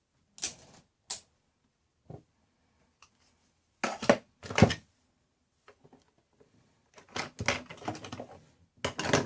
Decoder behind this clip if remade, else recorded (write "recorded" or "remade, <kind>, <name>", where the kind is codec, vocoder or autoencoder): recorded